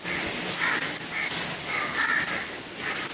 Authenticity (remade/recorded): recorded